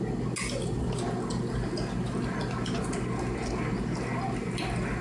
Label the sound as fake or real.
real